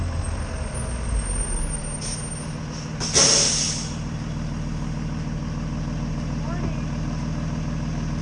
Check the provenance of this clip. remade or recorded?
recorded